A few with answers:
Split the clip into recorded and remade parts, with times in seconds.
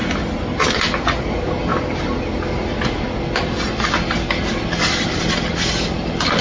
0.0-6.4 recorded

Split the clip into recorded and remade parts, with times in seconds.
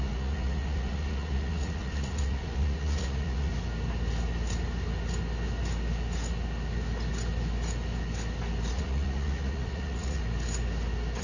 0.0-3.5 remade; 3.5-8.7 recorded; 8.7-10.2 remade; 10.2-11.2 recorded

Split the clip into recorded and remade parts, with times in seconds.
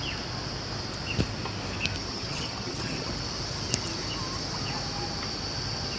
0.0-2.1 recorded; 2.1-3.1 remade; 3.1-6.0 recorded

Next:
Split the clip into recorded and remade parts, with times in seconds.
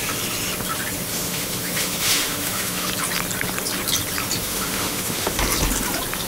0.0-1.1 recorded; 1.1-2.9 remade; 2.9-4.4 recorded; 4.4-5.4 remade; 5.4-6.3 recorded